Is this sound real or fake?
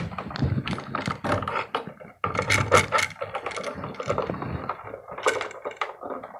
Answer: real